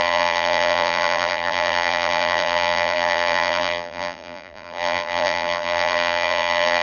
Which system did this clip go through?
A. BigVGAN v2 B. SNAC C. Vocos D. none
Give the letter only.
A